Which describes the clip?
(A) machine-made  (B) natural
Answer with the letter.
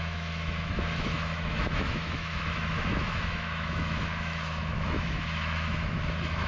A